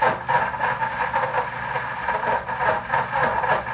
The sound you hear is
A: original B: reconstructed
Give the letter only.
A